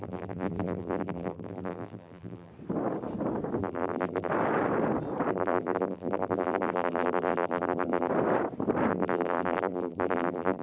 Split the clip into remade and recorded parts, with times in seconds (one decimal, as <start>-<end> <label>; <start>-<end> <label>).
0.0-2.5 remade; 2.5-3.6 recorded; 3.6-4.3 remade; 4.3-5.3 recorded; 5.3-8.1 remade; 8.1-8.9 recorded; 8.9-10.6 remade